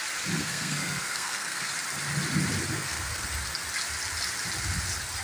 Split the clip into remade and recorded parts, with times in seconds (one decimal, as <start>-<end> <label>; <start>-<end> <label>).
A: 0.0-0.4 recorded; 0.4-1.7 remade; 1.7-2.7 recorded; 2.7-3.2 remade; 3.2-5.2 recorded